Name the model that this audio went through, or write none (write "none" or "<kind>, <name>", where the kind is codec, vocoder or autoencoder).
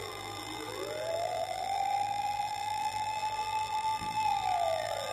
vocoder, BigVGAN v2